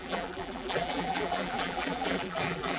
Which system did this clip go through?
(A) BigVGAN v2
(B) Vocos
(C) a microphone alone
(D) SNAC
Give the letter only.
A